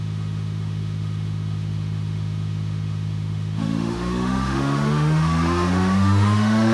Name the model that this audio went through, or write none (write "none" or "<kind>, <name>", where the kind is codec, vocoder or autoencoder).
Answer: autoencoder, DAC-VAE